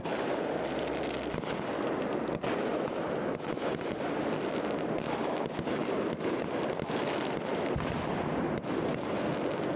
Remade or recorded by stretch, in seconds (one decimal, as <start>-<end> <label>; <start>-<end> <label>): 0.0-2.7 recorded; 2.7-4.5 remade; 4.5-9.8 recorded